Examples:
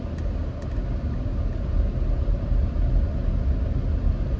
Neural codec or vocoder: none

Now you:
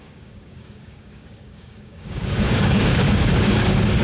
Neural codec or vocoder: codec, DAC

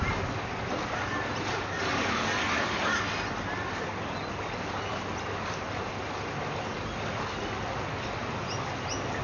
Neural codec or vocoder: none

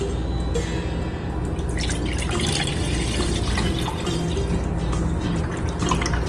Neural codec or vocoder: none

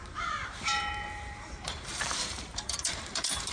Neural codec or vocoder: vocoder, BigVGAN v2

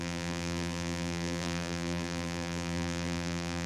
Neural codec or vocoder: vocoder, BigVGAN v2